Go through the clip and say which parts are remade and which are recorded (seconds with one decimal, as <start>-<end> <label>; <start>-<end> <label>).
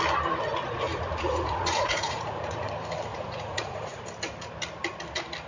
0.0-0.5 recorded; 0.5-2.7 remade; 2.7-3.1 recorded; 3.1-4.1 remade; 4.1-5.5 recorded